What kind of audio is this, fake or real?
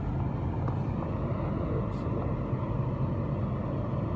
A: real